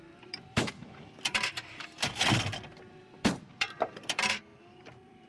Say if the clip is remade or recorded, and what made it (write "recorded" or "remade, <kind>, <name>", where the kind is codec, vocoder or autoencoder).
remade, vocoder, BigVGAN v2